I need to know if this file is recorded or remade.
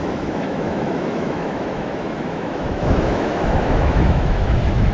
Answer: remade